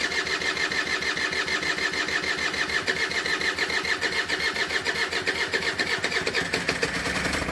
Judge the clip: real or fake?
real